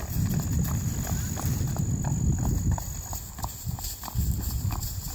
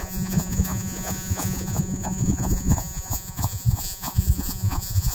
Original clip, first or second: first